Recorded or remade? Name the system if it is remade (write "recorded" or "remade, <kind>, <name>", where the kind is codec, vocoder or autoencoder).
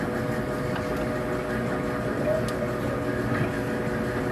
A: recorded